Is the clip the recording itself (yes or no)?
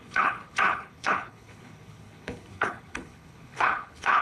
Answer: no